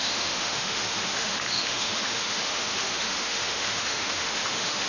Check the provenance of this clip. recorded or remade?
remade